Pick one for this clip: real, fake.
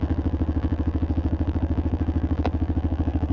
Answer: fake